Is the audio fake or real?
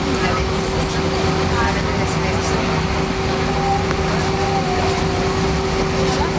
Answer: real